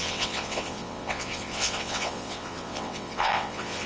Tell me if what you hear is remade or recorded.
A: remade